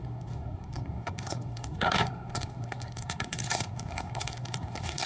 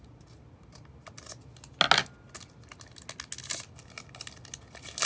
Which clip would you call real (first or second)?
second